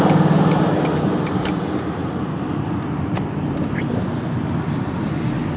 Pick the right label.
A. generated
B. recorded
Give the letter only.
B